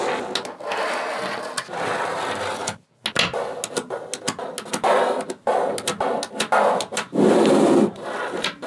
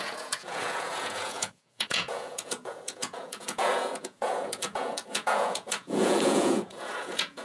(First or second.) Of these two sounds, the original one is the first